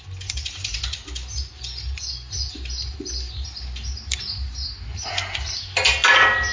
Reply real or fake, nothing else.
real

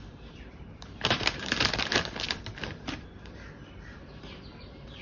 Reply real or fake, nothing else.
fake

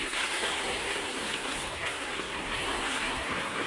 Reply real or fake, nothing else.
fake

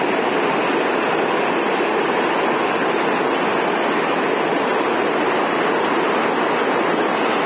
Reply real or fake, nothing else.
real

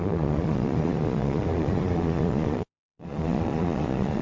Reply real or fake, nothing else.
fake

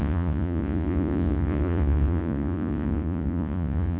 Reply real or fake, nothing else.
fake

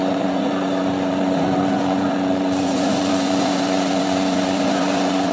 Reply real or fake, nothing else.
fake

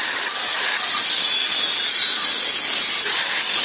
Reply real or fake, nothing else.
real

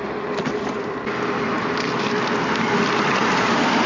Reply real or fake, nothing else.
real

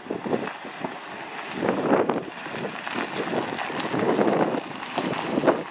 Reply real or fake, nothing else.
real